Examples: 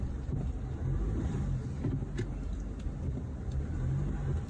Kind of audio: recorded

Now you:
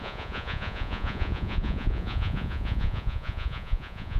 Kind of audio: remade